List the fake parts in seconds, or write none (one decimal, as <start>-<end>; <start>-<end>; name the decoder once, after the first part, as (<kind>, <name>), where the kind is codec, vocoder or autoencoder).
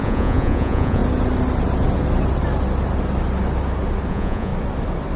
0.0-1.0 (vocoder, Vocos); 4.1-4.5